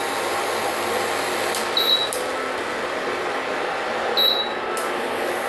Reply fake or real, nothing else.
real